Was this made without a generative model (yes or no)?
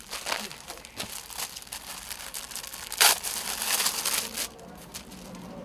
yes